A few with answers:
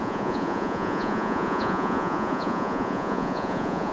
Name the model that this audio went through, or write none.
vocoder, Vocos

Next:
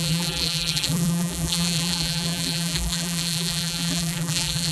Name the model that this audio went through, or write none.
vocoder, BigVGAN v2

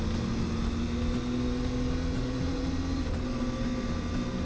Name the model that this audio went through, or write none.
none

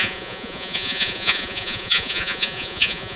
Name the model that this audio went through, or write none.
vocoder, Vocos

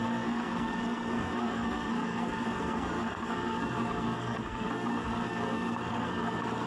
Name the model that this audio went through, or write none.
codec, SNAC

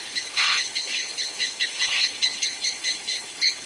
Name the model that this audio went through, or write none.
codec, HILCodec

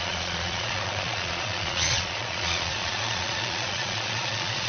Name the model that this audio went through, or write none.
vocoder, Vocos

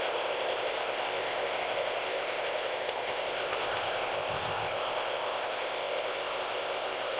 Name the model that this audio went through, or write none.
codec, ZipCodec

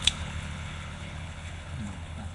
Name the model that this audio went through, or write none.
codec, HILCodec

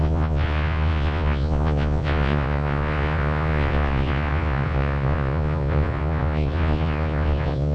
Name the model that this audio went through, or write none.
vocoder, Vocos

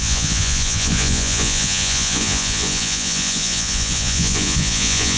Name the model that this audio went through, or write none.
vocoder, Vocos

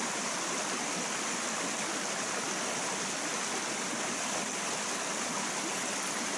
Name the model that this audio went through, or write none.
none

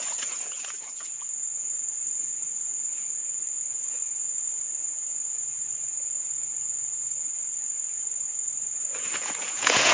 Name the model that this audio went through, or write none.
vocoder, Vocos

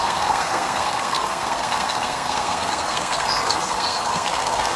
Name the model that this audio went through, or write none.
codec, SNAC